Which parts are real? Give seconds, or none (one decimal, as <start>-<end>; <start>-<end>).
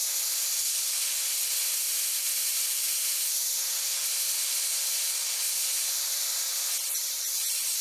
0.0-7.8